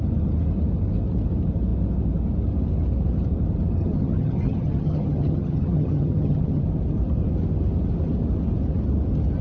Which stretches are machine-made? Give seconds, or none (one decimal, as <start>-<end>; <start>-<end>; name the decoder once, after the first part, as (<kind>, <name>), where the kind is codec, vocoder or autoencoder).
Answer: 3.8-6.6 (vocoder, HiFi-GAN)